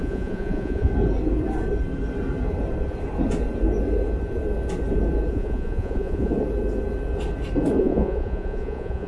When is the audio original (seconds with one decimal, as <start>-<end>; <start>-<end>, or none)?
0.9-5.3; 6.3-7.8